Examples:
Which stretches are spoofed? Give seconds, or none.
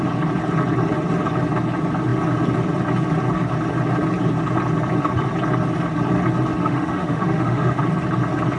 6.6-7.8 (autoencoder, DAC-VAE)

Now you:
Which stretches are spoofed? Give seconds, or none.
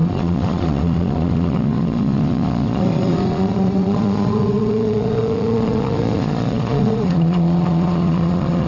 0.0-8.7 (vocoder, Vocos)